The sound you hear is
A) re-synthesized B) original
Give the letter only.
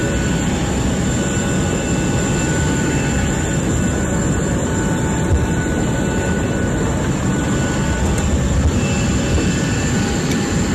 B